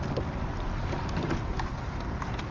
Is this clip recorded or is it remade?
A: recorded